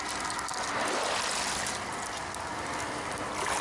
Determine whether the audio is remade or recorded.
recorded